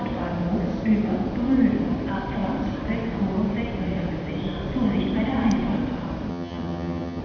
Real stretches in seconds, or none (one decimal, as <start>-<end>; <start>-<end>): 0.0-6.3